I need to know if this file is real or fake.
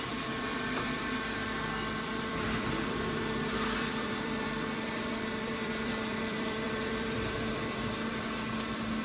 fake